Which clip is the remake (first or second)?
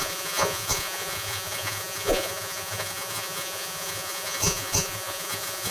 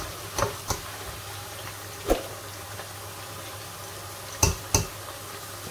first